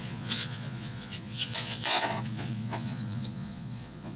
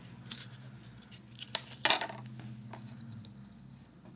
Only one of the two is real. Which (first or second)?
second